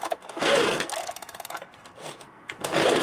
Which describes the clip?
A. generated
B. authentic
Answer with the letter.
A